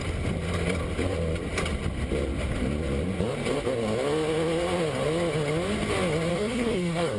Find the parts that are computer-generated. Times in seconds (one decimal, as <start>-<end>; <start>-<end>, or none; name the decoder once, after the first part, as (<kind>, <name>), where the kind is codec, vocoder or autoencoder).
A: 6.3-7.2 (codec, SNAC)